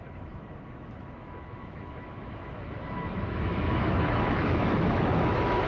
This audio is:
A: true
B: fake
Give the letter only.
B